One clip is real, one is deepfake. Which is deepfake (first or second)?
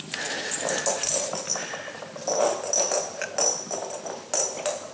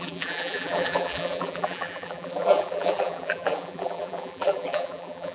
second